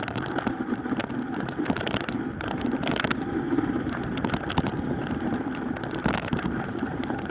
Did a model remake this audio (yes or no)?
yes